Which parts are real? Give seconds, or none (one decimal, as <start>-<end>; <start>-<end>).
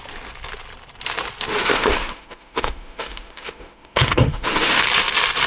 0.0-1.5; 4.8-5.5